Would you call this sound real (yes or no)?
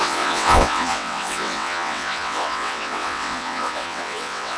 no